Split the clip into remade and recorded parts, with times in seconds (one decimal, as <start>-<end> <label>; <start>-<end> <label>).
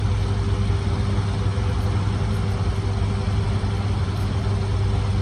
0.0-5.2 recorded